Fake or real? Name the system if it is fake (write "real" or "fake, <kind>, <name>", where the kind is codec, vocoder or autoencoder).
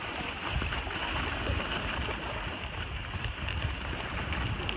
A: real